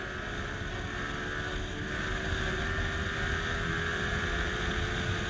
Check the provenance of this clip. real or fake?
real